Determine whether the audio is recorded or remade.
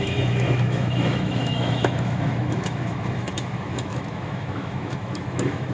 remade